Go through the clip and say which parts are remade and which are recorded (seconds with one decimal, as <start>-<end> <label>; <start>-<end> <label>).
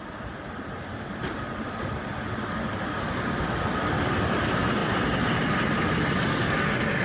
0.0-2.1 remade; 2.1-3.5 recorded; 3.5-4.8 remade; 4.8-5.4 recorded; 5.4-7.0 remade